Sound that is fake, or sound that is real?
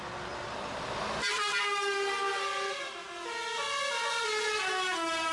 real